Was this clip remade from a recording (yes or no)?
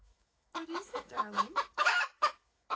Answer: yes